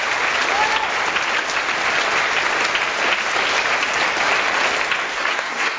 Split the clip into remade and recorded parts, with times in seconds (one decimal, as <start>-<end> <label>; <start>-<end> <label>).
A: 0.0-5.1 recorded; 5.1-5.8 remade